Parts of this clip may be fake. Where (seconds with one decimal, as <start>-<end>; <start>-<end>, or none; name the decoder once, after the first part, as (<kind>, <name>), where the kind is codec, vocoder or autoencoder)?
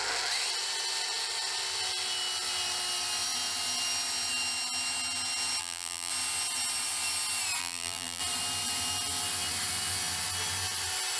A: 5.6-6.1 (vocoder, BigVGAN v2); 7.6-8.2